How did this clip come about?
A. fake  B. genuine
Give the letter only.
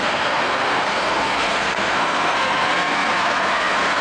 A